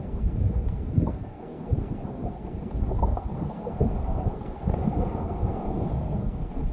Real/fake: fake